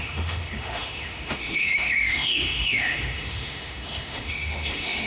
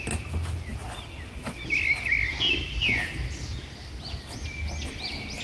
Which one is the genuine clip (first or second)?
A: second